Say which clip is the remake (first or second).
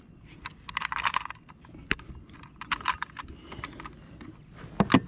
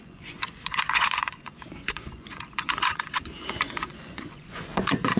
second